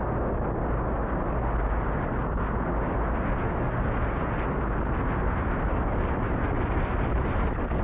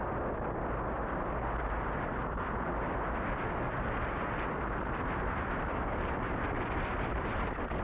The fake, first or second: second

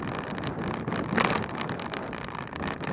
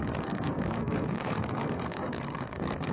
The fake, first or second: second